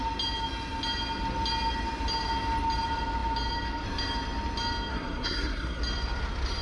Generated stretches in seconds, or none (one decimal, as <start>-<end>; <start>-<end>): 4.9-5.8